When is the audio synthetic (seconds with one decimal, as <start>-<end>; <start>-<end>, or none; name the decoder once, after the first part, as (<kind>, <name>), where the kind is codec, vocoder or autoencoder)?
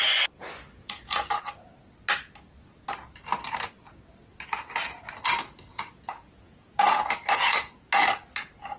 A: 0.8-1.3 (vocoder, Vocos); 5.7-7.8